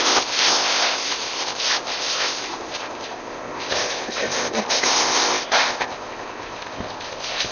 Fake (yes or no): yes